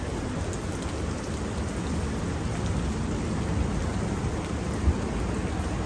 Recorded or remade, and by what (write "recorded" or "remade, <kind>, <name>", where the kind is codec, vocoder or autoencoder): recorded